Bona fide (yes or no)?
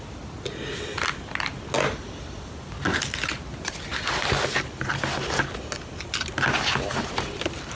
yes